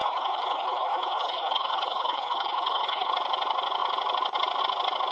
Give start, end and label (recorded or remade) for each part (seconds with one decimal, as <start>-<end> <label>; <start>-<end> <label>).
0.0-3.1 remade; 3.1-5.1 recorded